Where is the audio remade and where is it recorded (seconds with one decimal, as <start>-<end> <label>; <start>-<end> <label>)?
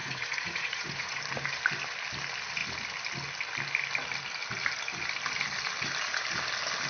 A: 0.0-1.2 remade; 1.2-6.9 recorded